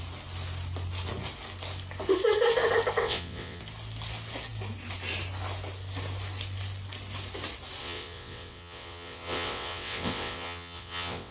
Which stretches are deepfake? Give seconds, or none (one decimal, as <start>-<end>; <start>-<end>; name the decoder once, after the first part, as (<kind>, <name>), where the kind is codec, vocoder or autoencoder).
3.0-3.6 (vocoder, WaveNeXt); 7.8-11.3